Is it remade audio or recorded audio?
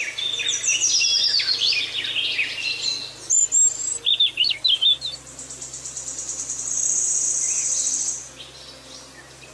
recorded